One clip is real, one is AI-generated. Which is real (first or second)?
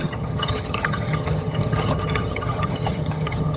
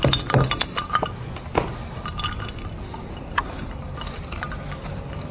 second